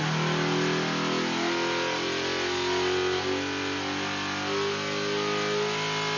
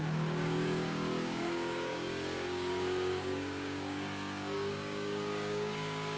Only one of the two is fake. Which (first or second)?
second